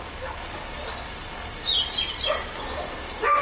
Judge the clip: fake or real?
real